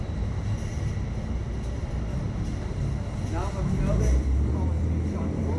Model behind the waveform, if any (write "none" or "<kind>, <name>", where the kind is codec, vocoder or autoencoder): none